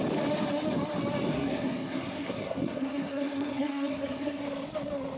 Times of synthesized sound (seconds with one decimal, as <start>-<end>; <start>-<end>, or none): 1.3-4.4